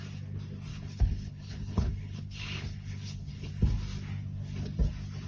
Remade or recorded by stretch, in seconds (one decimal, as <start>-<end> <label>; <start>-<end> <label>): 0.0-0.7 recorded; 0.7-3.5 remade; 3.5-5.3 recorded